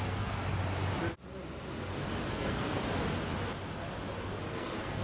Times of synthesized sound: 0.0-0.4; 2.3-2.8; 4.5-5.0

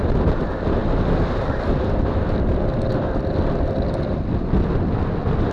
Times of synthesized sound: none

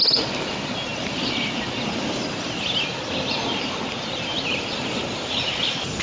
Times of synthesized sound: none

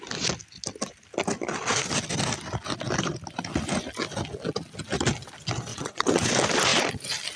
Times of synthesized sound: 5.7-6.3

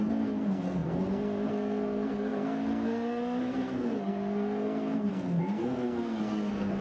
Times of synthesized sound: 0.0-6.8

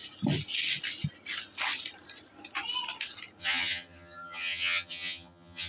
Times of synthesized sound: 3.4-5.7

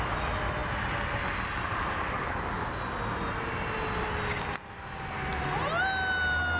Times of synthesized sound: none

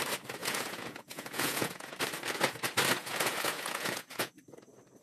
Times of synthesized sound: 0.4-2.0; 3.0-4.3